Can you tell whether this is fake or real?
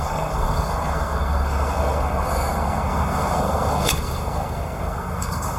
fake